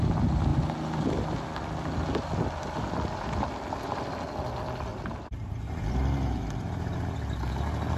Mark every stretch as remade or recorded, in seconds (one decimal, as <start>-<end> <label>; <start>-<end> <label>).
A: 0.0-4.9 recorded; 4.9-7.0 remade; 7.0-8.0 recorded